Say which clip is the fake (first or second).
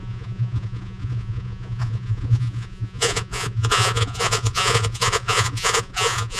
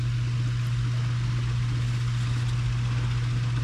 first